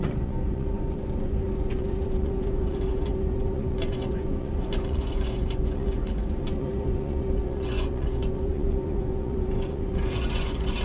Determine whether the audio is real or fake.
fake